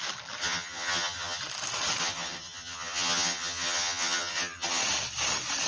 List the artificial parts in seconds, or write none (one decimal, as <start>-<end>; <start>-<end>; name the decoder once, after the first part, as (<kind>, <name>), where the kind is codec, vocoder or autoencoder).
0.4-1.4 (vocoder, HiFi-GAN); 2.0-4.8